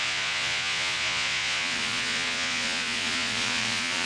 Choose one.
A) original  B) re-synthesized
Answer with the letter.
B